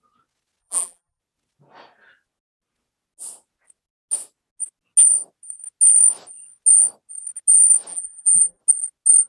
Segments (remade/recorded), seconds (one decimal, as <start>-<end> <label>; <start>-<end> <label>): 0.0-0.6 recorded; 0.6-1.2 remade; 1.2-7.9 recorded; 7.9-8.6 remade; 8.6-9.3 recorded